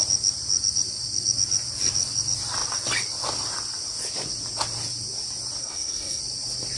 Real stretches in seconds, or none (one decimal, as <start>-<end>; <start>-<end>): 0.0-5.6; 6.2-6.8